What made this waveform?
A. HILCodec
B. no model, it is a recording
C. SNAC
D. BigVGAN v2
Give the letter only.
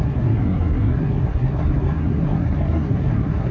C